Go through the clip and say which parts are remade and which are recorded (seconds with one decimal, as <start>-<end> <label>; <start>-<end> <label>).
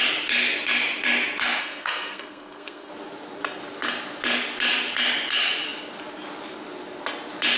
0.0-1.6 recorded; 1.6-2.9 remade; 2.9-7.6 recorded